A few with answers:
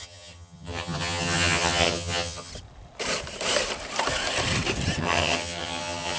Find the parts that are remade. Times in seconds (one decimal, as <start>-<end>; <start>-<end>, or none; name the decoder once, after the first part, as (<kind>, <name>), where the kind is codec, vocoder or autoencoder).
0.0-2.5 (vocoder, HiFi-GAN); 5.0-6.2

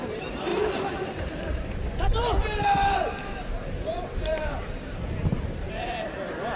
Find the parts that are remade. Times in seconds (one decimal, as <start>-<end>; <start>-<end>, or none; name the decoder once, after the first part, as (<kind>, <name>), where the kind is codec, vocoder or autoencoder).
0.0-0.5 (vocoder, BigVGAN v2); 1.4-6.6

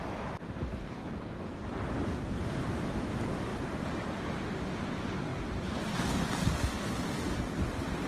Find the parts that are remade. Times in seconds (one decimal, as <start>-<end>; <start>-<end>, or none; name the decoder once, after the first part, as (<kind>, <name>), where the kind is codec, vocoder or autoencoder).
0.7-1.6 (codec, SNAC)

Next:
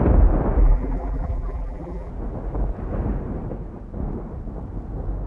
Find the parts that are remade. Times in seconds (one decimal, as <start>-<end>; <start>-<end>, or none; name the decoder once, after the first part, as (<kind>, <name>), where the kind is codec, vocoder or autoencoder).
0.6-2.1 (vocoder, BigVGAN v2)